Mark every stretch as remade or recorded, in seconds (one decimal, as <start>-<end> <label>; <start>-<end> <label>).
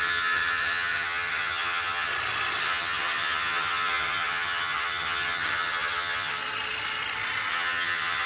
0.0-2.1 remade; 2.1-2.6 recorded; 2.6-6.4 remade; 6.4-7.5 recorded; 7.5-8.3 remade